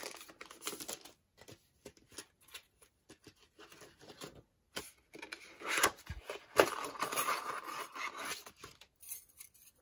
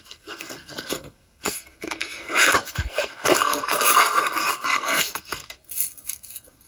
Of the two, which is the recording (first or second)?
first